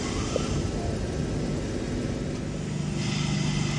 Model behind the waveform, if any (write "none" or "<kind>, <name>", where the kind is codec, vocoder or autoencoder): none